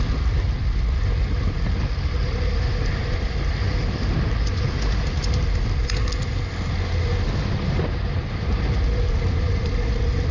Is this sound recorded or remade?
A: recorded